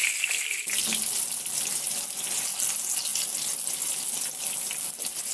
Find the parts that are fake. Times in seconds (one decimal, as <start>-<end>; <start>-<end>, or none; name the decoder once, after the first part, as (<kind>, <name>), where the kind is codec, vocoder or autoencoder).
none